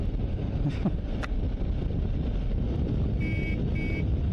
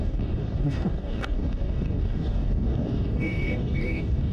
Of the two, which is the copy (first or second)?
second